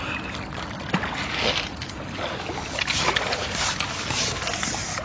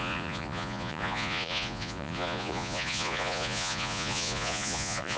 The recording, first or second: first